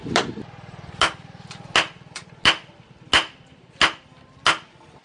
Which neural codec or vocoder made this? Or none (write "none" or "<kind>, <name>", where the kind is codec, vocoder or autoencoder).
none